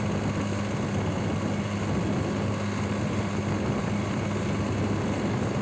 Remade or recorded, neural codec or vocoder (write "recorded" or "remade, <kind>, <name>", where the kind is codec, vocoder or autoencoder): recorded